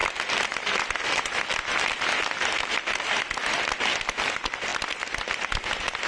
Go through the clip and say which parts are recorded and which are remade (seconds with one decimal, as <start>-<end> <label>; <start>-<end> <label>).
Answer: 0.0-4.7 recorded; 4.7-5.4 remade; 5.4-6.1 recorded